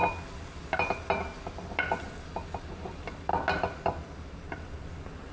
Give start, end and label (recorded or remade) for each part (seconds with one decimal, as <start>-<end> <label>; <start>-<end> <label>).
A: 0.0-5.3 recorded